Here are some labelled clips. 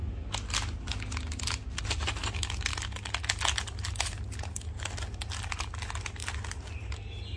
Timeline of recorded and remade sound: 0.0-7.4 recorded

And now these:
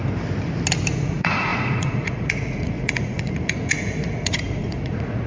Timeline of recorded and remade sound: 0.0-0.9 recorded; 0.9-5.3 remade

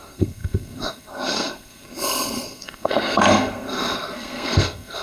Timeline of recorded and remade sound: 0.0-5.0 remade

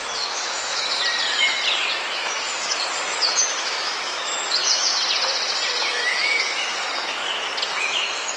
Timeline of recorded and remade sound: 0.0-1.0 remade; 1.0-2.1 recorded; 2.1-4.9 remade; 4.9-5.8 recorded; 5.8-7.2 remade; 7.2-7.8 recorded; 7.8-8.4 remade

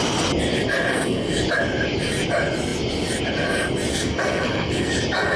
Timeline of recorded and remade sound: 0.0-0.9 recorded; 0.9-1.4 remade; 1.4-3.9 recorded; 3.9-4.9 remade; 4.9-5.4 recorded

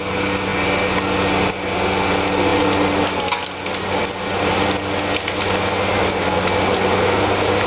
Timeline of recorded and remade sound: 0.0-7.7 recorded

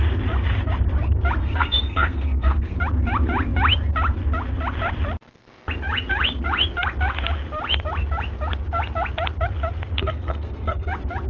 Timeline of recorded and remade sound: 0.0-1.4 recorded; 1.4-2.8 remade; 2.8-10.0 recorded; 10.0-10.9 remade; 10.9-11.3 recorded

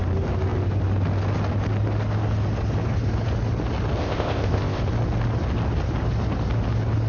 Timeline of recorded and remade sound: 0.0-4.0 recorded; 4.0-4.8 remade; 4.8-7.1 recorded